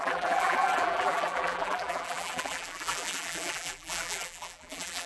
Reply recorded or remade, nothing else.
remade